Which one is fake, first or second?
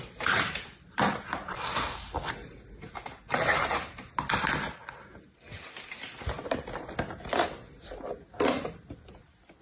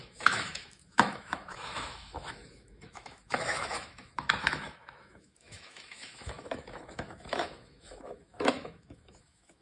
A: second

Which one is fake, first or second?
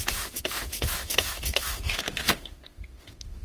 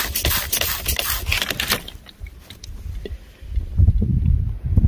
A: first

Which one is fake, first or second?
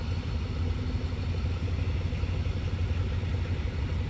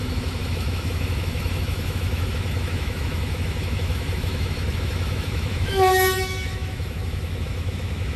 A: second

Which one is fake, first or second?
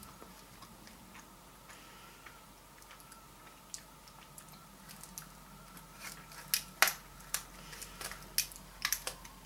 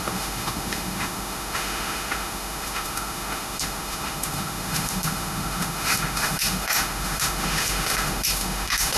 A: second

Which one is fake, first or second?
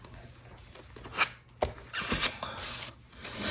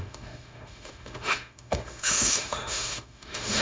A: second